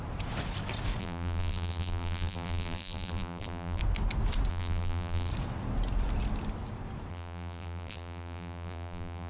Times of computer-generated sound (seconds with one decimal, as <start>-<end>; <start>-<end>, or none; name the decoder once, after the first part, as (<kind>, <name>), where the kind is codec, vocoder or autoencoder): 1.0-3.8 (vocoder, BigVGAN v2); 4.5-5.3; 7.1-9.3